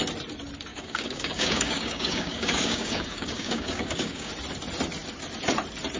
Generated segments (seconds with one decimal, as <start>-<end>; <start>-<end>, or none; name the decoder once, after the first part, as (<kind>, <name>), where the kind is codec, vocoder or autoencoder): 0.7-4.3 (codec, DAC)